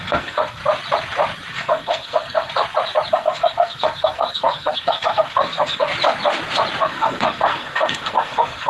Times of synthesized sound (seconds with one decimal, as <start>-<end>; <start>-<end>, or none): 0.0-0.6; 1.5-2.5; 3.1-5.9; 6.8-8.7